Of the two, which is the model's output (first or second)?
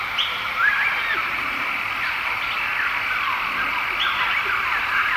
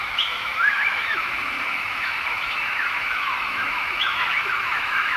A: second